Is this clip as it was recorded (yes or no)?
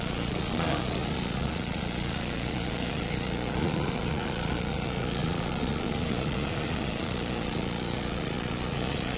no